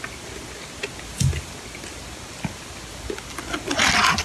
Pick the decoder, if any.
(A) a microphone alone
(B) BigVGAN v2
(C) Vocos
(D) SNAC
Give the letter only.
A